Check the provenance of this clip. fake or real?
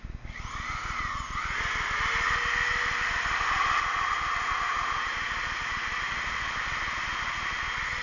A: real